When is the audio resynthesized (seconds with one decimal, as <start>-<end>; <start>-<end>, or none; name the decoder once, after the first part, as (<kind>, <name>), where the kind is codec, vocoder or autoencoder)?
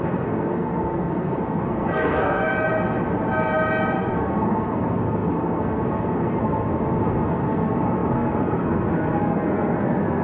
0.0-2.5 (codec, SNAC); 4.0-10.2